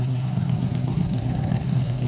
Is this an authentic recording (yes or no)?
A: no